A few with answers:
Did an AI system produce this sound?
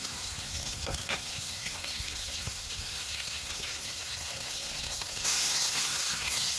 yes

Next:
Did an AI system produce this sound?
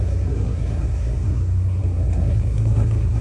yes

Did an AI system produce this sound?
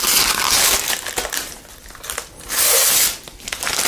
no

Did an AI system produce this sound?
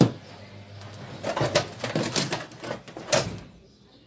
no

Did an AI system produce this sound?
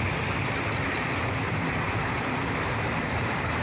no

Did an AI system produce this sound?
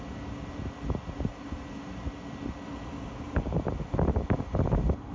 no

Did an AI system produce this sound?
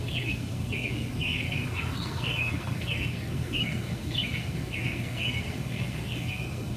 yes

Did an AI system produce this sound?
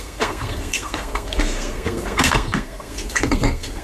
yes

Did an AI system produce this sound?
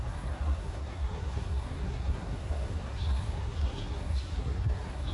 yes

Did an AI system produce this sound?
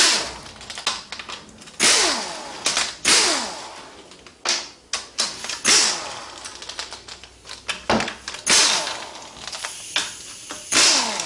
no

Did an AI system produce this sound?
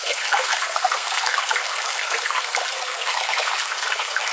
yes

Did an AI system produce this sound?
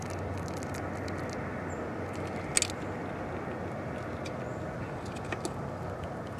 no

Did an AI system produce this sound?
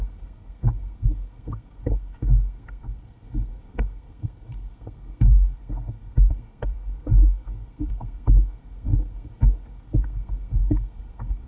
yes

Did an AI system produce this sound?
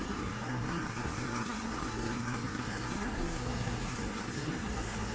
yes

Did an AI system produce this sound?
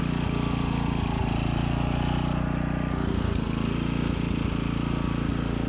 no